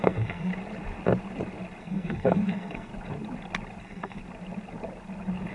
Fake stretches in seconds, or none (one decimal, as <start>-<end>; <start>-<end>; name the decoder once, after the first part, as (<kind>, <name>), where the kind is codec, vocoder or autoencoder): 0.0-0.5 (codec, SNAC); 1.8-2.9; 3.8-4.2